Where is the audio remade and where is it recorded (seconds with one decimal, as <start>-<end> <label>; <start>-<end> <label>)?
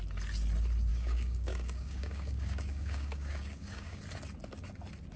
0.0-0.9 recorded; 0.9-4.0 remade; 4.0-5.2 recorded